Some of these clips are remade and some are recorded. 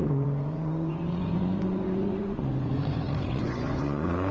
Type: remade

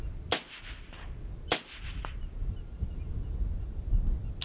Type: recorded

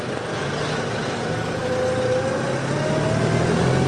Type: recorded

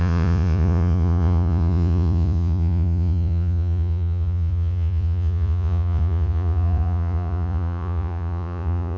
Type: remade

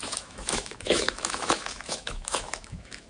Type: remade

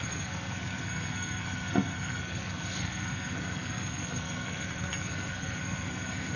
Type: remade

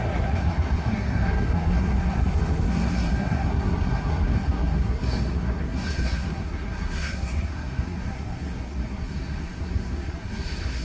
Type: remade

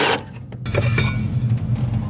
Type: recorded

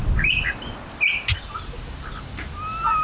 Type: recorded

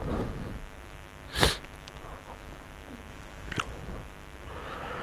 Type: remade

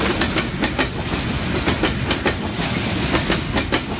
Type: recorded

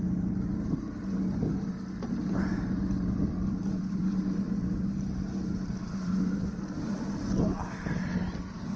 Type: recorded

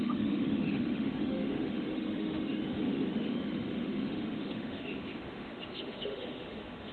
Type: remade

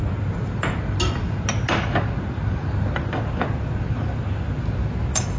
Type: recorded